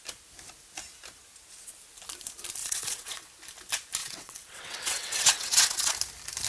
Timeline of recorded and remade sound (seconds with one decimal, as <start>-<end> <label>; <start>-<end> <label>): 0.0-2.6 recorded; 2.6-3.3 remade; 3.3-4.0 recorded; 4.0-5.9 remade; 5.9-6.5 recorded